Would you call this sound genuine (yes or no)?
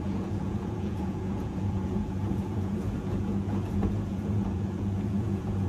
no